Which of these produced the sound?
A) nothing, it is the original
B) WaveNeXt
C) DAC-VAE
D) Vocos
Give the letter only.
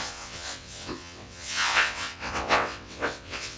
B